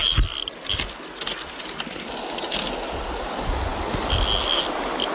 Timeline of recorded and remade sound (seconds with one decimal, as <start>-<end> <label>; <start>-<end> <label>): 0.0-5.1 recorded